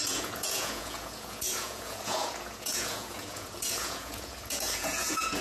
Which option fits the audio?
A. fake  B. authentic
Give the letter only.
A